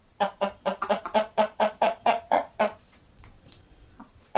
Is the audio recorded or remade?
remade